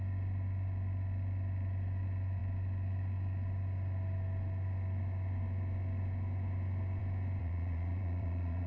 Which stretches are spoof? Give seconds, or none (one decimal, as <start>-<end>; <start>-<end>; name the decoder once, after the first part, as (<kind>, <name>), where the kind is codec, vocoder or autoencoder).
7.4-8.7 (vocoder, Vocos)